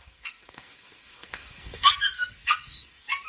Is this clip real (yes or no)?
no